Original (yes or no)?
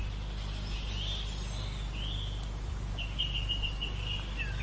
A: yes